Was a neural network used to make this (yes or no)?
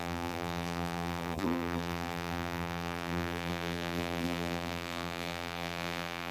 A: yes